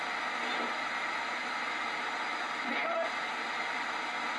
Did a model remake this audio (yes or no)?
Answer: no